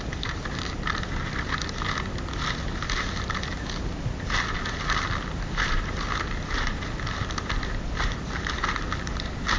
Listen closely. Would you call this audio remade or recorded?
recorded